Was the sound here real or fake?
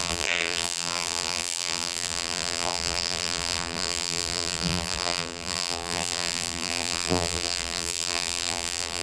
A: fake